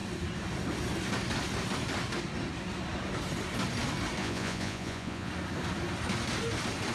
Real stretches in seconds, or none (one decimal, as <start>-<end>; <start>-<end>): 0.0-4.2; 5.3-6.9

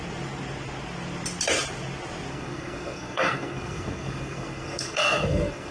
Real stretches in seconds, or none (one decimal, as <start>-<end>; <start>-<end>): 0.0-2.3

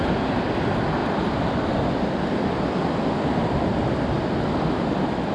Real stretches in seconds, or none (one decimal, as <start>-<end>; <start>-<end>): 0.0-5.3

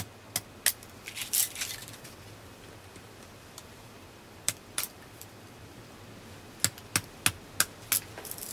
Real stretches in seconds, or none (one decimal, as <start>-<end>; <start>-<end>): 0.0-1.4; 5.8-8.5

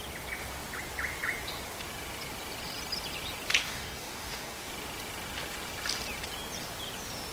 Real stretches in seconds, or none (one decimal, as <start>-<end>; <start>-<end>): 0.0-3.6; 4.7-7.3

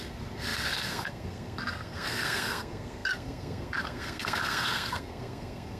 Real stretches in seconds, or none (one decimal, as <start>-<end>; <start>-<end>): none

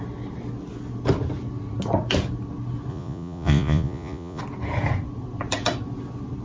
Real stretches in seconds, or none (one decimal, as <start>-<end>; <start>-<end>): 0.0-2.9; 4.4-6.4

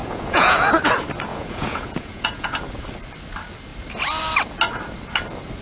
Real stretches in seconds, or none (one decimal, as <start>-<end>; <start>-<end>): 0.7-1.3; 2.5-5.6